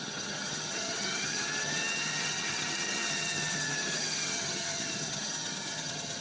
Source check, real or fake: fake